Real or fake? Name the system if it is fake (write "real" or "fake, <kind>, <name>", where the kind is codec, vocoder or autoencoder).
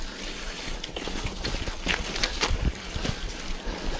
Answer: real